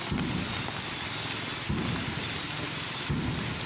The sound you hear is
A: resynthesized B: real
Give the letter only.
B